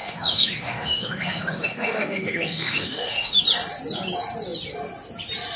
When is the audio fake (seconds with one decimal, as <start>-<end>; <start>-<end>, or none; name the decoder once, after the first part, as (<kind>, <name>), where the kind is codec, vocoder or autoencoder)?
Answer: 0.0-3.4 (autoencoder, DAC-VAE)